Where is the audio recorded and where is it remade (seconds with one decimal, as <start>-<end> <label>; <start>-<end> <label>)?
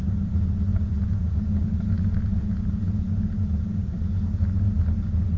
0.0-0.7 recorded; 0.7-3.9 remade; 3.9-5.4 recorded